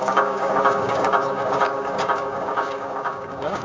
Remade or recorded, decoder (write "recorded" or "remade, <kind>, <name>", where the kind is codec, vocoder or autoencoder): remade, codec, DAC